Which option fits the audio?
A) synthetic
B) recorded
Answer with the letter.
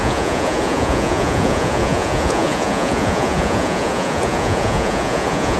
A